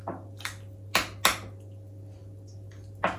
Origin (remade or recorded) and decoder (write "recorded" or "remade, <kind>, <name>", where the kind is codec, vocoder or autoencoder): recorded